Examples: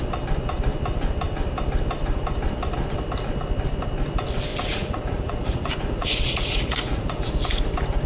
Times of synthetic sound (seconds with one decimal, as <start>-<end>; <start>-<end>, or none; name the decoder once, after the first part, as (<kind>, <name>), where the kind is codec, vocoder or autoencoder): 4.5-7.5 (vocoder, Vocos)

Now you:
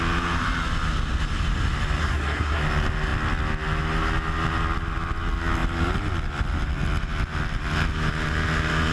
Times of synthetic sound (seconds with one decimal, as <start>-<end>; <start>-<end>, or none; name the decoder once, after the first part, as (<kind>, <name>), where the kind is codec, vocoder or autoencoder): 2.0-2.6 (codec, SNAC)

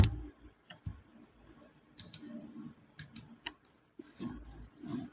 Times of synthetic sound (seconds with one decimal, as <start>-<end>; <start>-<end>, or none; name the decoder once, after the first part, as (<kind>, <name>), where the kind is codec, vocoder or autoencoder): none

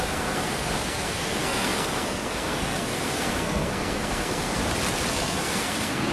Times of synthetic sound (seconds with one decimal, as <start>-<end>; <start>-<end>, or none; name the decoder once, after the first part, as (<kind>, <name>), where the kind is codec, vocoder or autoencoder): 0.0-4.6 (codec, SNAC); 5.1-6.1

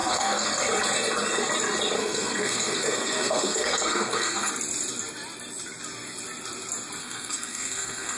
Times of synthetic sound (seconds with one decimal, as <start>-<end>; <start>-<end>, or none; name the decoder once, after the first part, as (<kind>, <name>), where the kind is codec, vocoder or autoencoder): 0.0-0.5 (codec, SNAC); 2.0-4.5; 7.0-8.2

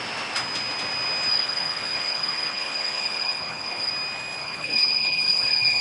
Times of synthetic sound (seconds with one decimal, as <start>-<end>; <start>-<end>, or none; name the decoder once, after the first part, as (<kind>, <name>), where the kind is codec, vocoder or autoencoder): 1.3-3.9 (codec, HILCodec); 4.4-5.8